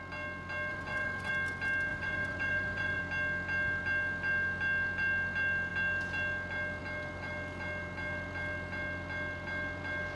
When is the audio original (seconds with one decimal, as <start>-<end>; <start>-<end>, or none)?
0.0-0.7; 1.3-1.9; 3.0-10.2